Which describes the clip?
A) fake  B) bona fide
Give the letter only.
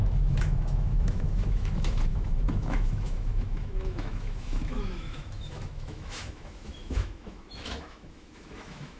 A